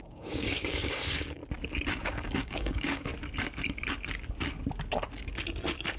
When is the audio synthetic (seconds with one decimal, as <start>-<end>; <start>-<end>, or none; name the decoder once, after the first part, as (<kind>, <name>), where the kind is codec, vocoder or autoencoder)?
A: 0.0-1.4 (codec, DAC); 2.0-3.1